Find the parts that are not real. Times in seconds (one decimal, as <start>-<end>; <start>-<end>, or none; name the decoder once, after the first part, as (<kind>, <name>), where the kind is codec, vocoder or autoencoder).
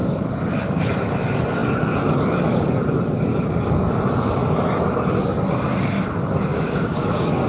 6.5-7.5 (codec, DAC)